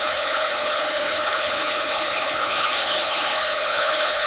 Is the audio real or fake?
fake